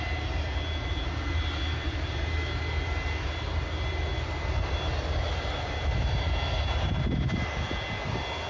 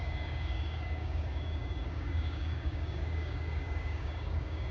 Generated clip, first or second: second